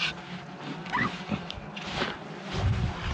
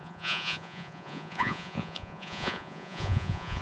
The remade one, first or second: second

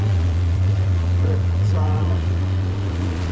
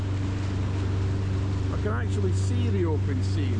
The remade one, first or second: first